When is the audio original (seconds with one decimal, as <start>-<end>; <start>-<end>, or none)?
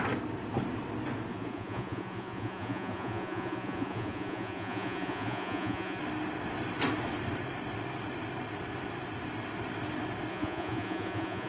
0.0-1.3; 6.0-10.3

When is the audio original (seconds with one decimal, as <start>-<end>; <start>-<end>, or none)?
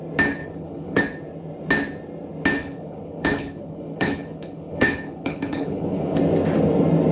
0.0-0.4; 1.0-2.6; 6.2-7.1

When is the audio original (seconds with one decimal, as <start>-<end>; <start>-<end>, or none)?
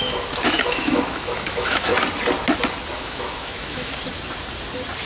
1.9-2.9; 3.9-5.1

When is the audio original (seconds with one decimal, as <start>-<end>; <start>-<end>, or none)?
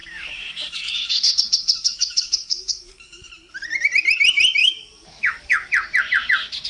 3.3-4.6; 5.7-6.7